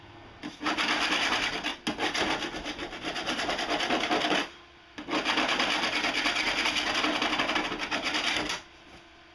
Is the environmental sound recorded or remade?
recorded